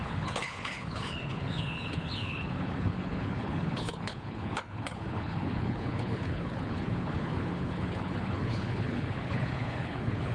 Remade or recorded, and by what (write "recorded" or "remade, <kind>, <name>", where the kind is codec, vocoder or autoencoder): remade, codec, HILCodec